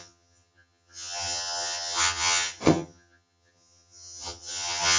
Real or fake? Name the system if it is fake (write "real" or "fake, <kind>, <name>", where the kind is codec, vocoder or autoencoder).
fake, vocoder, HiFi-GAN